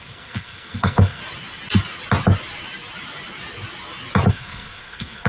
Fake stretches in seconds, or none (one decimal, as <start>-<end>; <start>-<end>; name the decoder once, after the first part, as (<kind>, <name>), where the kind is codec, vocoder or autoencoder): 0.0-1.2 (codec, SNAC); 4.3-5.3